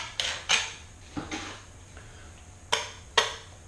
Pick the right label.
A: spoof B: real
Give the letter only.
B